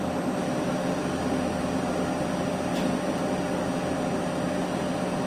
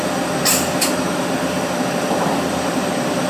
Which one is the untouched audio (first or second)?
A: first